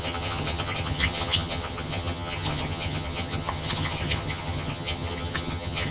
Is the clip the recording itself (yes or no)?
no